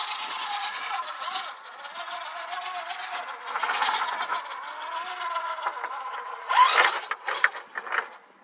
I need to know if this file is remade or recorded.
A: recorded